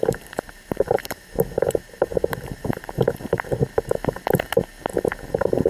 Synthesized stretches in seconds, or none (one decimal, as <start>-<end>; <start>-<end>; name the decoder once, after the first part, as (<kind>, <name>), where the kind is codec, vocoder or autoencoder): 0.0-3.6 (vocoder, BigVGAN v2); 5.3-5.7